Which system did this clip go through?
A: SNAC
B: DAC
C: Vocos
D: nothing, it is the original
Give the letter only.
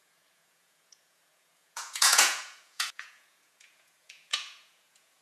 C